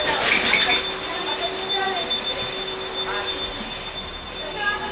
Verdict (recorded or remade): recorded